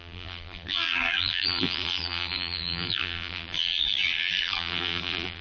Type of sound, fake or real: fake